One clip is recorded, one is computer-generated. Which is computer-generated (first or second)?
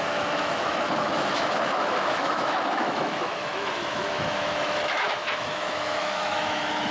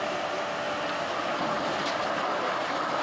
first